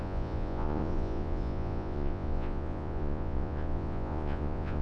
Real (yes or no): no